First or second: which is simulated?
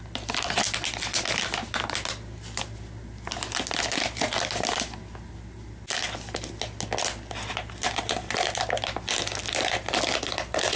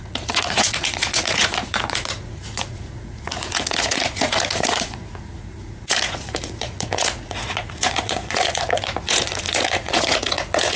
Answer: second